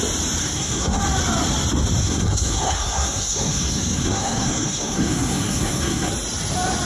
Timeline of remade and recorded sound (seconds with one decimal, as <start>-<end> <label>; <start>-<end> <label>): 0.0-0.4 recorded; 0.4-1.0 remade; 1.0-2.0 recorded; 2.0-6.1 remade; 6.1-6.8 recorded